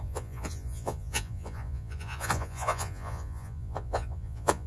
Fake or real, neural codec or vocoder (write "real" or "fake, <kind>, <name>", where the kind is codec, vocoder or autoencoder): fake, vocoder, Vocos